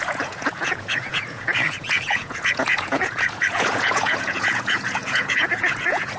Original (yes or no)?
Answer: no